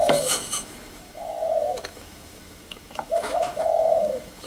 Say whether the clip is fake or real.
fake